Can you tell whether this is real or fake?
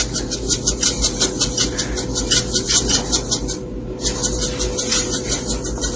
real